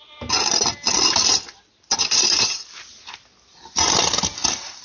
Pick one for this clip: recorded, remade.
recorded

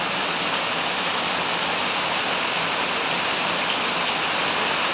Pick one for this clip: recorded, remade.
recorded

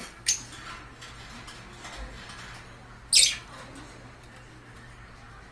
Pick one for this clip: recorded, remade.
recorded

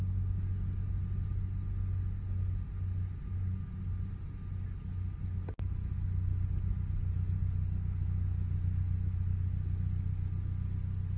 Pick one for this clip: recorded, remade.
recorded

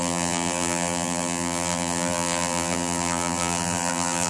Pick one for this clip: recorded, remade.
remade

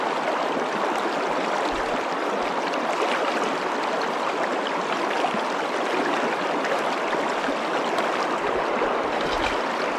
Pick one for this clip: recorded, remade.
recorded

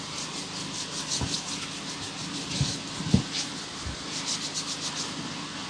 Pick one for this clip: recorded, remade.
recorded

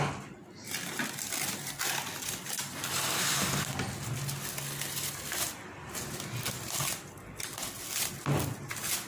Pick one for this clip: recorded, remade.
recorded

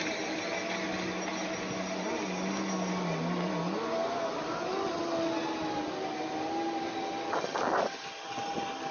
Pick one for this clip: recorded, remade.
recorded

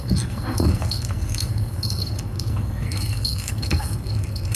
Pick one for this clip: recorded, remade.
remade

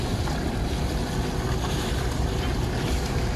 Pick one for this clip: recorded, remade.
remade